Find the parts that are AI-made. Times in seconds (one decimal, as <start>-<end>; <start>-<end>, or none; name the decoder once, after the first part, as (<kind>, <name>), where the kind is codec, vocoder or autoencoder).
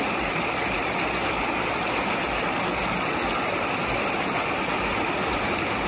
none